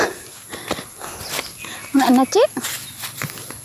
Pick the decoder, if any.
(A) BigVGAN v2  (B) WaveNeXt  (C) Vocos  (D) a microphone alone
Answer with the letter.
D